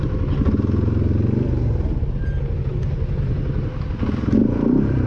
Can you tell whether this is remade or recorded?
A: recorded